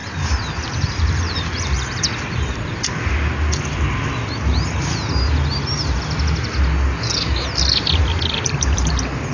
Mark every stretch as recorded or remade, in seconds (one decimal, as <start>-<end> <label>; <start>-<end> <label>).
0.0-2.8 remade; 2.8-8.0 recorded; 8.0-8.9 remade; 8.9-9.3 recorded